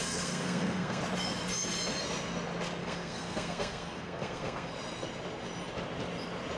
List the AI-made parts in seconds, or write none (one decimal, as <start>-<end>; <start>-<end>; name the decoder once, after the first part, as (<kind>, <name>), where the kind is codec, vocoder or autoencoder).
0.0-1.0 (codec, SNAC); 2.8-4.7